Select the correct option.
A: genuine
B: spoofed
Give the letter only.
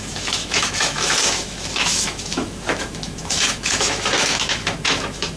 B